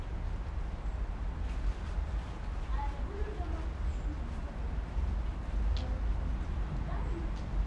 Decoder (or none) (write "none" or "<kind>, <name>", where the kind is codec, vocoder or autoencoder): none